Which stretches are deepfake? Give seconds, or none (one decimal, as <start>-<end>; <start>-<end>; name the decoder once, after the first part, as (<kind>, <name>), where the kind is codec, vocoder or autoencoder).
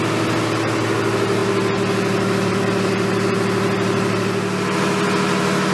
none